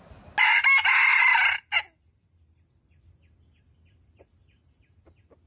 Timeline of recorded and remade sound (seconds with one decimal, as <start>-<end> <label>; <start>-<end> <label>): 0.0-5.5 recorded